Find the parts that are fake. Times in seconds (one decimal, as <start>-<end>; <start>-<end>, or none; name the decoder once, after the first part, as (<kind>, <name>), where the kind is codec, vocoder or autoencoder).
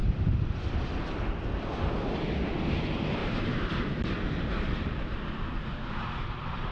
3.2-3.7 (vocoder, BigVGAN v2)